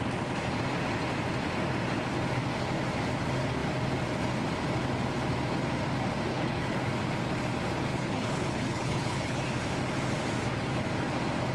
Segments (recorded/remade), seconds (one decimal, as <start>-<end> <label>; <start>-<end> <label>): 0.0-6.3 recorded; 6.3-6.8 remade; 6.8-7.9 recorded; 7.9-9.4 remade; 9.4-11.5 recorded